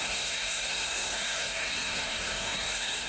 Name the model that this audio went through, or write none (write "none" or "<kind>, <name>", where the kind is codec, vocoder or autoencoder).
codec, SNAC